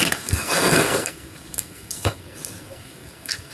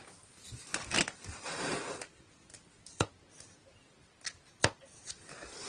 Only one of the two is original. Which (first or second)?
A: second